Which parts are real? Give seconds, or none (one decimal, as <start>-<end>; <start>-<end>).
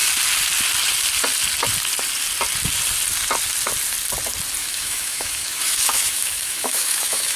0.0-4.6